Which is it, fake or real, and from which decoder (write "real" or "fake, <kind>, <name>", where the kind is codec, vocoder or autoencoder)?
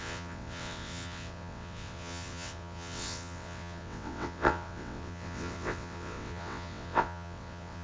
fake, vocoder, WaveNeXt